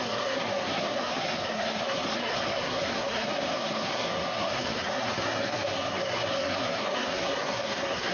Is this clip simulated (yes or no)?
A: yes